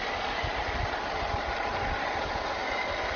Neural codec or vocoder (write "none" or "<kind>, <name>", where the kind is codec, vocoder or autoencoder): none